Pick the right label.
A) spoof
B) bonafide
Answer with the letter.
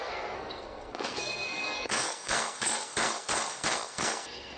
A